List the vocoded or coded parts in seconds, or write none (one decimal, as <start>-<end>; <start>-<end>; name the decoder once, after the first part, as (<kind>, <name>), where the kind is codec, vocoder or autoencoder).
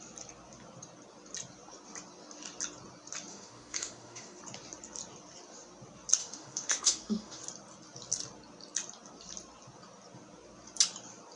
3.3-4.4 (autoencoder, DAC-VAE); 6.2-7.4